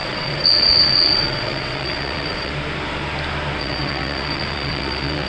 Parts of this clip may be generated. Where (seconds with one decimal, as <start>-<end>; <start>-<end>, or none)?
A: 0.0-2.5; 3.6-5.3